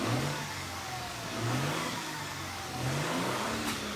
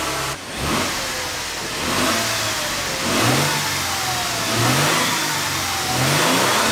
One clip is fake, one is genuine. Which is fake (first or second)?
first